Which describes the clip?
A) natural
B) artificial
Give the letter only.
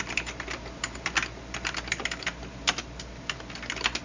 A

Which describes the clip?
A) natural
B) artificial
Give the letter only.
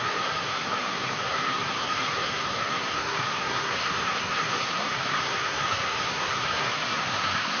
B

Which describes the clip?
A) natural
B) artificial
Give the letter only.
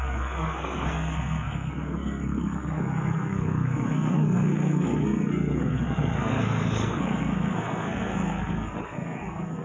B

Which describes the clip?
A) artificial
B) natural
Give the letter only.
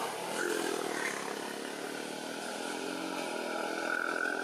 B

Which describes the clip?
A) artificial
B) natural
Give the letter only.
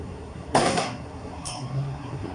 A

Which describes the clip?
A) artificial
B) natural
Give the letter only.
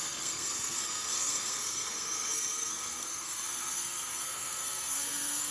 A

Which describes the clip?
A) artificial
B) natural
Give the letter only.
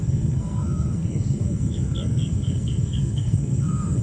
A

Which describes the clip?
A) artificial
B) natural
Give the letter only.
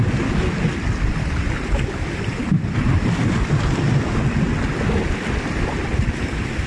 B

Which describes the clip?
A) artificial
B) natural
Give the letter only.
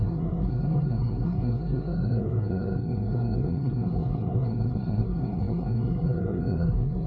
A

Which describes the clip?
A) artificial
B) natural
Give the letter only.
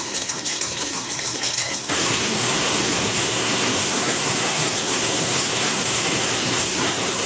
A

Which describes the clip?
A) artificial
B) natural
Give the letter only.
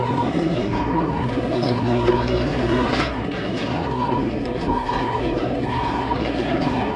A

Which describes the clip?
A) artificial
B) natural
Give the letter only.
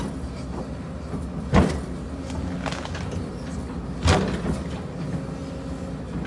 B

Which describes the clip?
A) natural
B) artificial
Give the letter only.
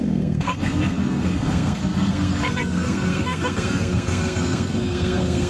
B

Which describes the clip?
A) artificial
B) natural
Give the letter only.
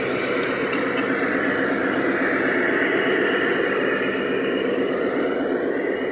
B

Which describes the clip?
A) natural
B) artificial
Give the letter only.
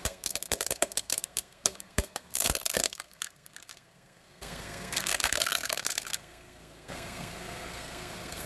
B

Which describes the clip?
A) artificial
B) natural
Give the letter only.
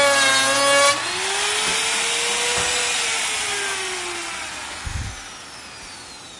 B